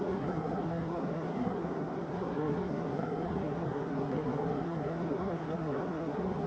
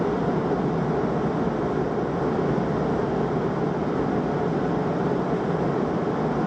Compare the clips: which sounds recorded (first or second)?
second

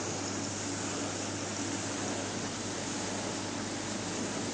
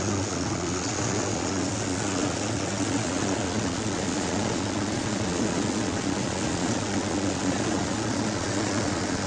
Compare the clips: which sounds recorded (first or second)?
first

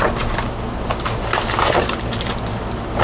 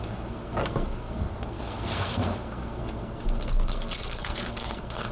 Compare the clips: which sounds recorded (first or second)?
first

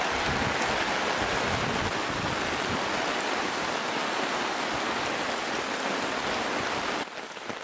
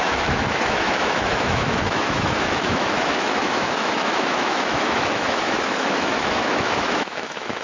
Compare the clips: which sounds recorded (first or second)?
first